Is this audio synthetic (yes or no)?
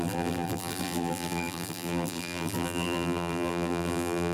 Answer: yes